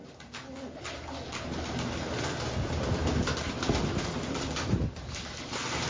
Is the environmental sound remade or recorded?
recorded